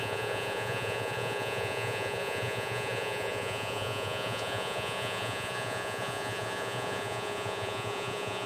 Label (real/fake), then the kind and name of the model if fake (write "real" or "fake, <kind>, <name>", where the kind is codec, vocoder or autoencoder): fake, vocoder, Vocos